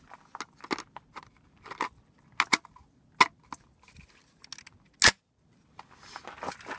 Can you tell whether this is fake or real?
real